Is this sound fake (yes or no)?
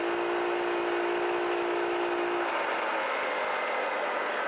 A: no